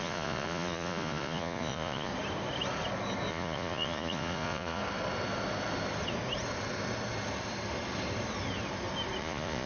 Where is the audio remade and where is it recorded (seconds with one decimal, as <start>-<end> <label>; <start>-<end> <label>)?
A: 0.0-2.1 remade; 2.1-3.3 recorded; 3.3-4.8 remade; 4.8-9.2 recorded; 9.2-9.7 remade